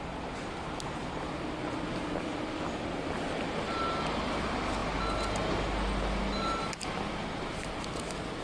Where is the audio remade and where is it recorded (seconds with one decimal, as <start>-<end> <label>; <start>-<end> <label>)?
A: 0.0-8.4 recorded